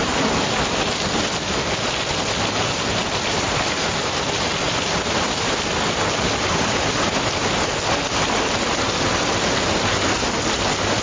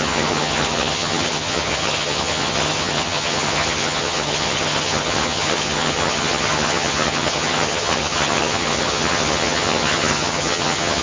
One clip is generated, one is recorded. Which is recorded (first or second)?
first